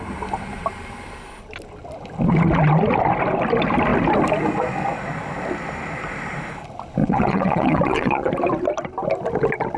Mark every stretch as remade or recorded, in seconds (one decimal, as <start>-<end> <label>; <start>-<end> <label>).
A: 0.0-7.0 recorded; 7.0-8.3 remade; 8.3-9.8 recorded